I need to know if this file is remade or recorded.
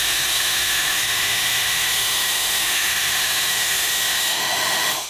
remade